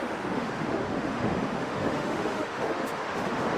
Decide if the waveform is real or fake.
fake